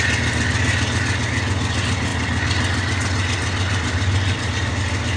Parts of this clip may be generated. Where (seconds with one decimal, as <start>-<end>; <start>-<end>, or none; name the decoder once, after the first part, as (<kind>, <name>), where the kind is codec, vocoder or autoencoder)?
none